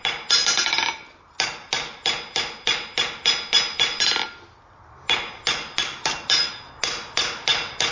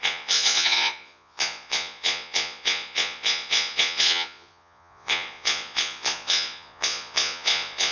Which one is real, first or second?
first